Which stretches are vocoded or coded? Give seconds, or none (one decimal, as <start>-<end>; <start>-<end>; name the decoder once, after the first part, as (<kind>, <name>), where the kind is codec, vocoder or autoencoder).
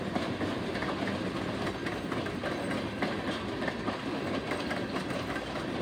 none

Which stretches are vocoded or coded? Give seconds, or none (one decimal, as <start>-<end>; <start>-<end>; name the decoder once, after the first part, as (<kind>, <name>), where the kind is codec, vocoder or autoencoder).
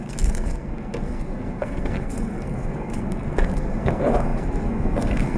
0.0-5.4 (codec, SNAC)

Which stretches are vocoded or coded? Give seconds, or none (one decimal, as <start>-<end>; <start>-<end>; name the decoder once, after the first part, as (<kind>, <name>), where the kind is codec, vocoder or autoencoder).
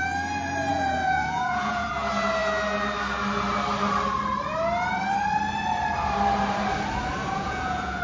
0.7-1.9 (vocoder, Vocos); 7.2-8.0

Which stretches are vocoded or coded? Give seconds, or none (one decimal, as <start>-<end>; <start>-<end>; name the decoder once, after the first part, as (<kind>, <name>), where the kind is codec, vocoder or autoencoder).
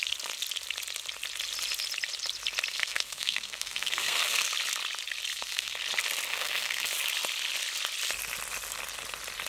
2.7-4.5 (codec, SNAC); 5.3-5.8; 6.3-6.9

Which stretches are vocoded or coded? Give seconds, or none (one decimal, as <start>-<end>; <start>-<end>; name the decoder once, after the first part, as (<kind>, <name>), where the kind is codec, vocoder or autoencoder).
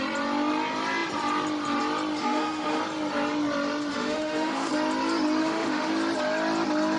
2.2-2.8 (autoencoder, DAC-VAE); 3.9-4.7; 5.4-5.9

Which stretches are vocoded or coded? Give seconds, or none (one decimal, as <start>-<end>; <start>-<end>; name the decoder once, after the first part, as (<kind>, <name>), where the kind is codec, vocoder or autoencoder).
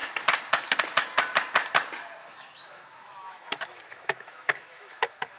2.2-5.4 (autoencoder, DAC-VAE)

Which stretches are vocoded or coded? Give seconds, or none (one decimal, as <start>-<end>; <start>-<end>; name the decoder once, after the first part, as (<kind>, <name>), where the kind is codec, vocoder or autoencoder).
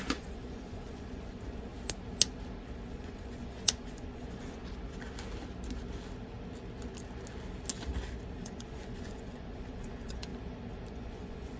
0.0-1.7 (vocoder, Vocos); 2.9-4.6; 8.4-10.3; 10.9-11.6